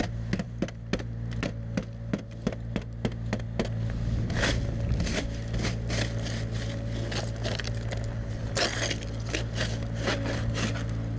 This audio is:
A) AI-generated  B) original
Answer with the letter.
B